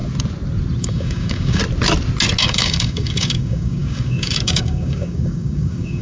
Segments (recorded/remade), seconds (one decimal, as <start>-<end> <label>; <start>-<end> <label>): 0.0-0.8 recorded; 0.8-1.6 remade; 1.6-2.4 recorded; 2.4-6.0 remade